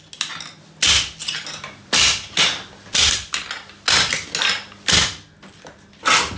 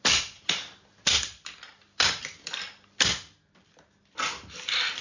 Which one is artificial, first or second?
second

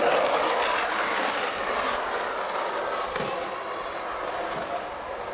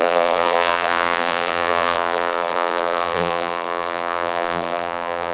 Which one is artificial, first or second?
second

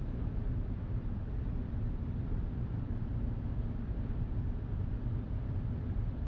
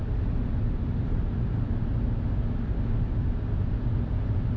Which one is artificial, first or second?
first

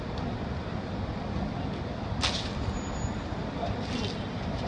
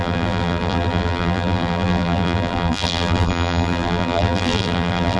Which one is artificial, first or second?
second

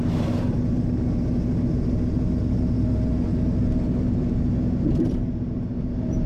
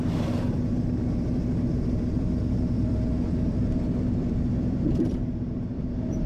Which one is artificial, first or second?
second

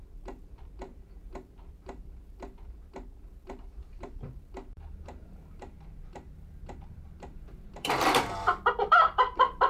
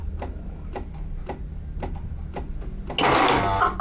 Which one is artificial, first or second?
first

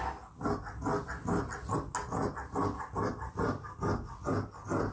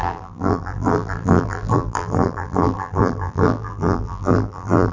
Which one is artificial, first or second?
second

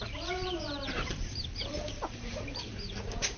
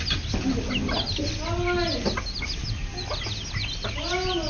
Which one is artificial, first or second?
first